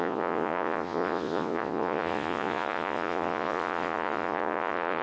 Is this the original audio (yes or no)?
no